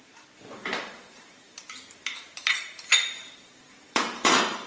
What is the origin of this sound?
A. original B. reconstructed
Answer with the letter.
B